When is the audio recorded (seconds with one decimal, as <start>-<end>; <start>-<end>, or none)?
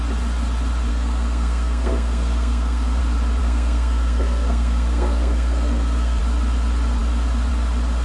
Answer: 0.0-0.9; 3.0-3.4; 6.2-8.0